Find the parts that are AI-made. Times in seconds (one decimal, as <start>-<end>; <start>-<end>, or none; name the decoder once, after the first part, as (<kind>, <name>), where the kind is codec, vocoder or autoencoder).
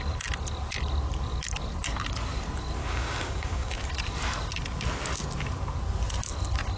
2.8-3.8 (codec, DAC)